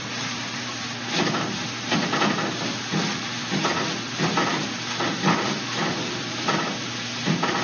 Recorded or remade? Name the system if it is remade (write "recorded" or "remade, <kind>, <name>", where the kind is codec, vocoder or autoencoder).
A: recorded